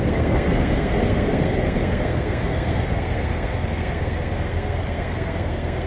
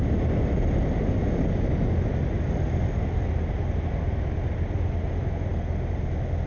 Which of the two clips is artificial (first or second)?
first